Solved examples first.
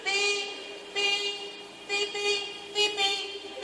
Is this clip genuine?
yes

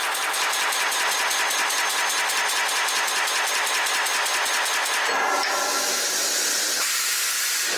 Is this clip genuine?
yes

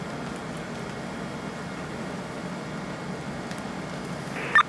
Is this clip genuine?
yes